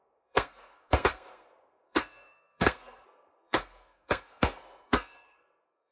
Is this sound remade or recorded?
remade